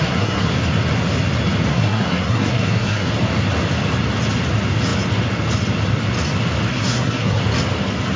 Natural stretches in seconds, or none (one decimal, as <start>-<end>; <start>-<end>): 0.5-1.7; 3.1-6.7; 7.4-8.2